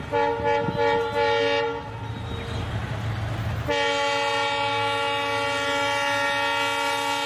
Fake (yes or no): no